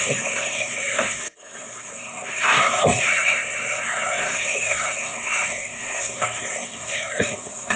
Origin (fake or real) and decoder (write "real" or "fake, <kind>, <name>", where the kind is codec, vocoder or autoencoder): fake, codec, SNAC